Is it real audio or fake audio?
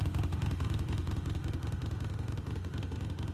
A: fake